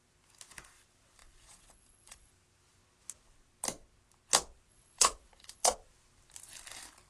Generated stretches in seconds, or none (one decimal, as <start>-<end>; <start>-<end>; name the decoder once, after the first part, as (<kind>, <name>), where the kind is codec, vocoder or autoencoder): 1.2-2.3 (vocoder, Vocos); 4.7-5.7